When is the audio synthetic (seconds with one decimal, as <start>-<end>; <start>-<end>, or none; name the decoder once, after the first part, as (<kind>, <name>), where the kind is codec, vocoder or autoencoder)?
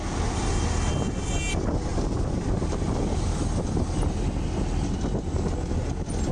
none